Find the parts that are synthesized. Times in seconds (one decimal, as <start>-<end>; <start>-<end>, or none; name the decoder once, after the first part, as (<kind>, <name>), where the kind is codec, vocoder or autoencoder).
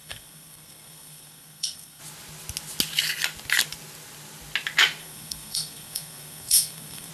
0.0-2.0 (codec, SNAC); 5.0-7.1